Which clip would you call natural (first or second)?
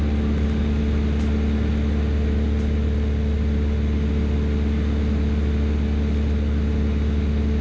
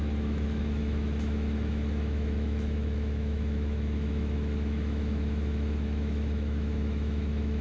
first